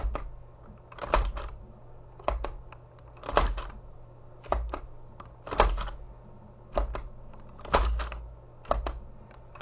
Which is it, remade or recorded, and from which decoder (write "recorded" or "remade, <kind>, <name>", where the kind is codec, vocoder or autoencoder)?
recorded